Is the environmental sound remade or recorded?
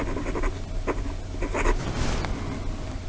recorded